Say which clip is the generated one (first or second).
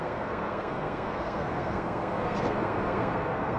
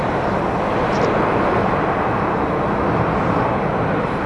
first